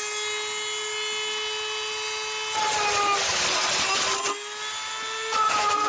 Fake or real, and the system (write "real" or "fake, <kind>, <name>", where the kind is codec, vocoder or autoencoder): real